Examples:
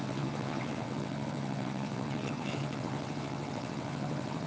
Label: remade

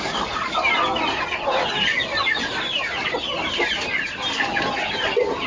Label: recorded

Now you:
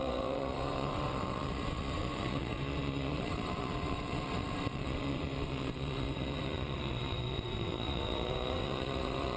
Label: remade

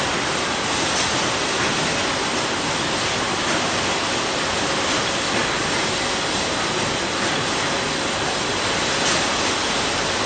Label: recorded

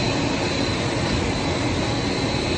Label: recorded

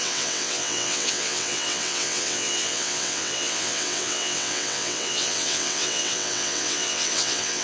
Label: remade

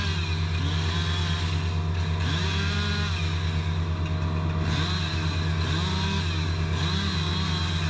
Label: recorded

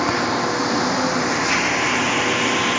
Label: recorded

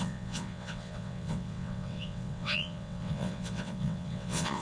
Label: remade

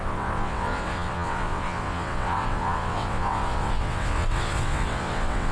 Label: remade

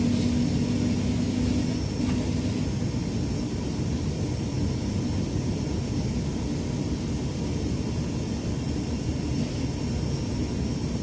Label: recorded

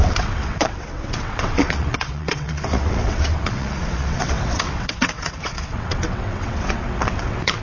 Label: remade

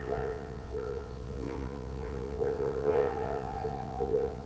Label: remade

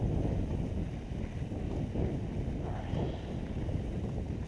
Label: recorded